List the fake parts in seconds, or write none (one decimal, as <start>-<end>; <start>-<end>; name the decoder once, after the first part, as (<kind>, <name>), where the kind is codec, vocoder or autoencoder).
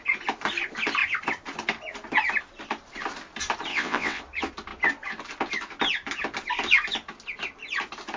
3.7-4.2 (vocoder, WaveNeXt)